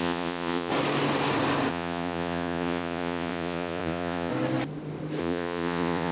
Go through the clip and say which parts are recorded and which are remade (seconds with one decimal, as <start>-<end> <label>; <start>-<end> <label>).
0.0-0.7 remade; 0.7-1.7 recorded; 1.7-4.3 remade; 4.3-5.2 recorded; 5.2-6.1 remade